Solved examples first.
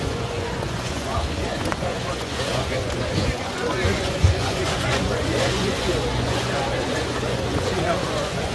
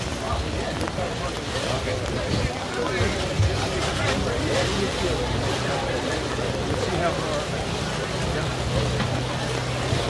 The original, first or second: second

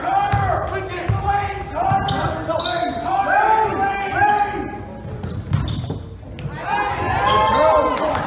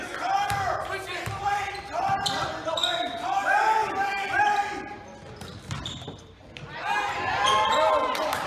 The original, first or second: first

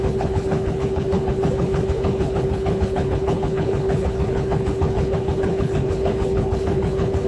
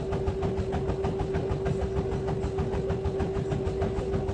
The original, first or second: second